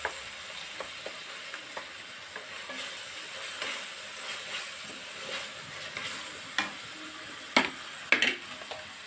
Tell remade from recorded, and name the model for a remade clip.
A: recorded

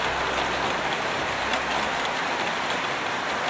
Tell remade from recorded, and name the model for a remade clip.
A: recorded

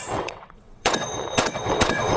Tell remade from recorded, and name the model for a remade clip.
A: remade, vocoder, WaveNeXt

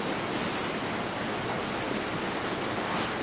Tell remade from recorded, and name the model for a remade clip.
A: recorded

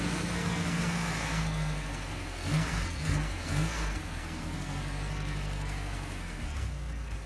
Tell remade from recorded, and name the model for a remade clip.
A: remade, codec, SNAC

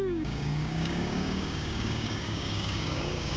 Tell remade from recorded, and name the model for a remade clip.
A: remade, codec, DAC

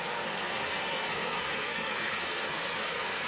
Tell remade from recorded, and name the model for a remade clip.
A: remade, codec, SNAC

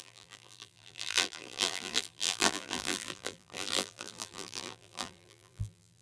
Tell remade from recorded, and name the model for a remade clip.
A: remade, vocoder, BigVGAN v2